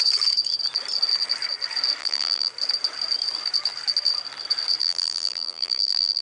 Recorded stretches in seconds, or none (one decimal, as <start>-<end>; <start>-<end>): 0.0-2.0; 2.5-4.8